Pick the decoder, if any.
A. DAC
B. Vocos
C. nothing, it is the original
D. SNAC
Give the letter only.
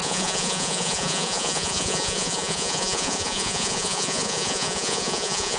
B